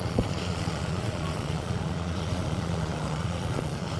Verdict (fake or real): fake